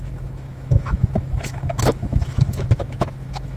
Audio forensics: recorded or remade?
remade